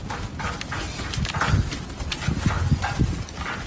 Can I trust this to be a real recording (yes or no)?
yes